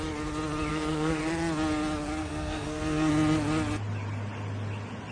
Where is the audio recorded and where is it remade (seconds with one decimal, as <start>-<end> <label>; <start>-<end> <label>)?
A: 0.0-0.7 recorded; 0.7-1.2 remade; 1.2-2.2 recorded; 2.2-3.1 remade; 3.1-5.1 recorded

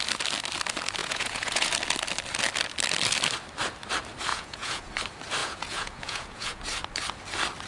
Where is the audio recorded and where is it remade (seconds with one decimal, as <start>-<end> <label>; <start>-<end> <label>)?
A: 0.0-1.0 recorded; 1.0-1.7 remade; 1.7-4.3 recorded; 4.3-4.8 remade; 4.8-5.4 recorded; 5.4-6.6 remade; 6.6-7.7 recorded